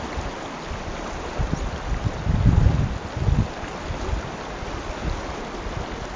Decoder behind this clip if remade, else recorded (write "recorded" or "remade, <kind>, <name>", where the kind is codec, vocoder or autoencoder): recorded